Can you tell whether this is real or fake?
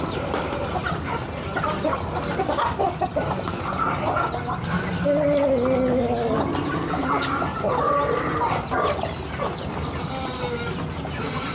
real